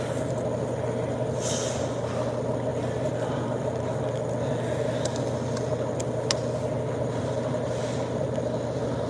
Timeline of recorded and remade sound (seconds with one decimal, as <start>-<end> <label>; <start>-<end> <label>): 0.0-9.1 recorded